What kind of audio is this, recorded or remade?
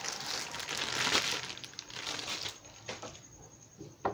recorded